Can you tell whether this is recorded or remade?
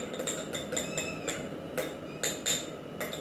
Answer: recorded